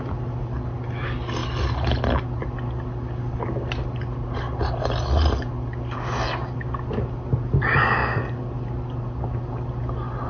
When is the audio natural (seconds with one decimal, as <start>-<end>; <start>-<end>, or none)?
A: 0.0-10.3